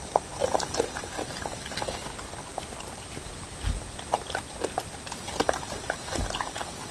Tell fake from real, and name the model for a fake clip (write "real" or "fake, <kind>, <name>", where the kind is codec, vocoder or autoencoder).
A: real